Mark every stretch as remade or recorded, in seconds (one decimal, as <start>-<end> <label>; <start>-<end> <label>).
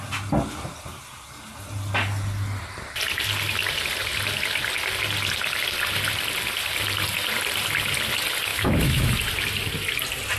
0.0-8.5 recorded; 8.5-9.1 remade; 9.1-10.4 recorded